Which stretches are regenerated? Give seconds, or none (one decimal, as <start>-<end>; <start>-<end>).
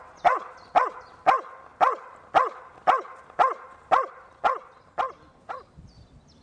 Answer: none